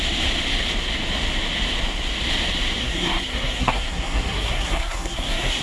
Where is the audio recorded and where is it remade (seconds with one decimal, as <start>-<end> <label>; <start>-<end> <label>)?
0.0-2.8 recorded; 2.8-5.6 remade